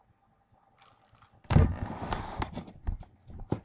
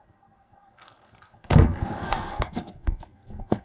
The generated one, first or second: second